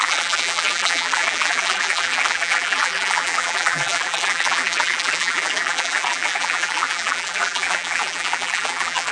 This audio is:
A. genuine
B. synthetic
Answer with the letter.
B